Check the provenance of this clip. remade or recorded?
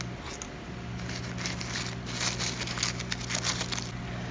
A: recorded